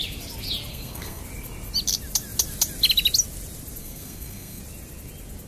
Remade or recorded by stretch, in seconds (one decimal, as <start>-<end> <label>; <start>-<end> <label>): 0.0-0.7 recorded; 0.7-1.2 remade; 1.2-3.8 recorded; 3.8-4.6 remade; 4.6-5.5 recorded